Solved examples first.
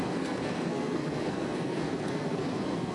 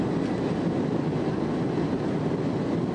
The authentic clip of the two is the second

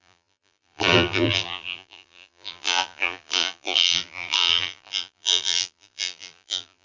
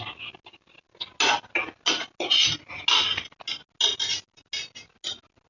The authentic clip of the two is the second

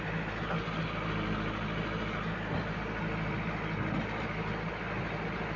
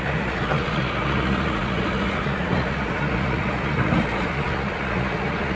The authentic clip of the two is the first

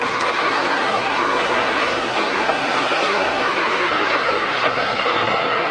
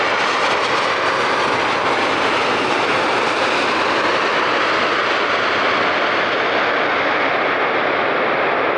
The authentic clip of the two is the second